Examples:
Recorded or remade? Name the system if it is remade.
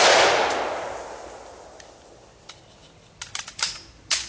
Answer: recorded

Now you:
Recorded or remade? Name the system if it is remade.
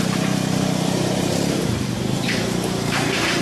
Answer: remade, vocoder, BigVGAN v2